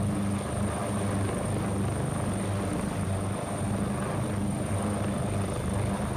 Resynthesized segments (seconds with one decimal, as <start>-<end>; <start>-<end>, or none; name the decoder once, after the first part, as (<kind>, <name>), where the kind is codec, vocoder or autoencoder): none